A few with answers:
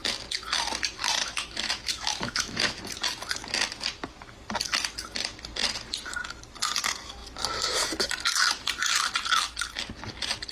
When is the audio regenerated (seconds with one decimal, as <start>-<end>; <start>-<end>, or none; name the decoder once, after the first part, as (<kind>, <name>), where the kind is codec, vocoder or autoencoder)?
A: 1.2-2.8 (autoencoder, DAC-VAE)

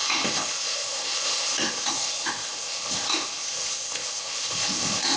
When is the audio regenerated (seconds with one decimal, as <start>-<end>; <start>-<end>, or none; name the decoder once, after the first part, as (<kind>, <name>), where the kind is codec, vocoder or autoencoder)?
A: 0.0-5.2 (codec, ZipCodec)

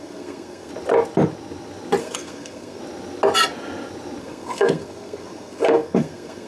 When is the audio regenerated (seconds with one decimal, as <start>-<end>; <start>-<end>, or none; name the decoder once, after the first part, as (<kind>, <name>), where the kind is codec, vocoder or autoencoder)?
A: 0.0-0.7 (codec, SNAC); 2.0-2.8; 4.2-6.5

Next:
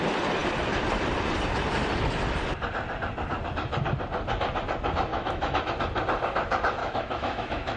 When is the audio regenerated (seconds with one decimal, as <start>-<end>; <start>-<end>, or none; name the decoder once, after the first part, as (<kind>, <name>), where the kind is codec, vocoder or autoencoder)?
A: 5.1-5.6 (autoencoder, DAC-VAE); 6.8-7.8